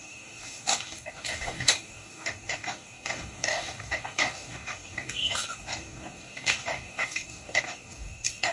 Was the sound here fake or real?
fake